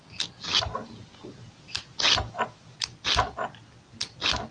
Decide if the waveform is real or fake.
real